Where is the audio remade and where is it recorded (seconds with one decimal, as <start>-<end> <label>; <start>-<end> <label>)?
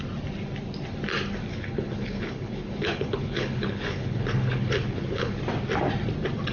0.0-1.5 recorded; 1.5-5.4 remade; 5.4-6.5 recorded